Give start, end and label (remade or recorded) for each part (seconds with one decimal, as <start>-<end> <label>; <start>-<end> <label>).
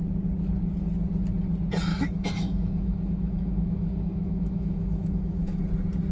0.0-1.9 recorded; 1.9-5.6 remade; 5.6-6.1 recorded